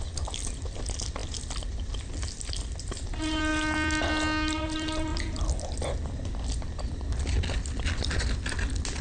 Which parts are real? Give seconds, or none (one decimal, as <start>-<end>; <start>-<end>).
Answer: 0.0-9.0